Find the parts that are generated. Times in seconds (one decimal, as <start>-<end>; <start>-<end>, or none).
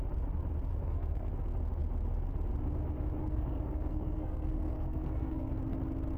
0.7-1.3; 3.2-5.5